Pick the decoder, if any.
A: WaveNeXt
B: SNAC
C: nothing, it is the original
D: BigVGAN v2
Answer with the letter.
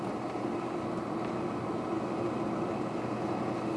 C